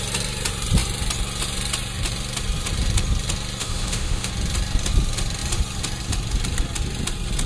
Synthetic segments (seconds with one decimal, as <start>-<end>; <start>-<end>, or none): 3.6-4.3